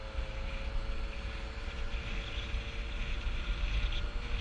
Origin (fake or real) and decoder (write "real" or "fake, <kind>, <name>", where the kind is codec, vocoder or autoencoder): real